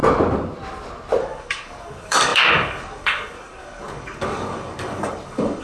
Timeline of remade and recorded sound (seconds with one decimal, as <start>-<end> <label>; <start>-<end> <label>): 0.0-1.2 recorded; 1.2-5.6 remade